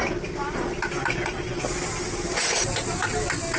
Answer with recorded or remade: recorded